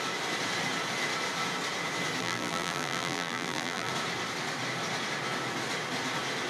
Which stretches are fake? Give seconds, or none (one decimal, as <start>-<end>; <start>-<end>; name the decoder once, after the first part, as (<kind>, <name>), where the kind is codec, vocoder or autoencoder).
2.2-3.9 (vocoder, BigVGAN v2)